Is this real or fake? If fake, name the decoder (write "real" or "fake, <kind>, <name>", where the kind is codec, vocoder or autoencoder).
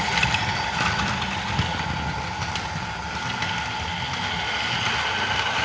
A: real